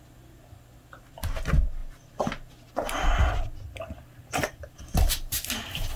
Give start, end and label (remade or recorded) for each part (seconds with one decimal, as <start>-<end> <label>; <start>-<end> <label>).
0.0-6.0 recorded